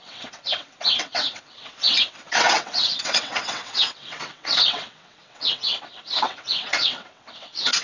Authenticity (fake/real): fake